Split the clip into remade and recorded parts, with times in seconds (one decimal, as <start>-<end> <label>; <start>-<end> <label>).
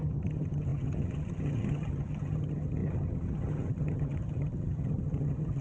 0.0-5.6 remade